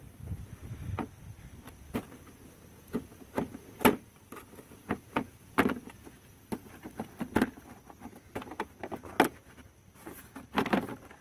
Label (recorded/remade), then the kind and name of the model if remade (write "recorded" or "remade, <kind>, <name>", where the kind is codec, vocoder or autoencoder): recorded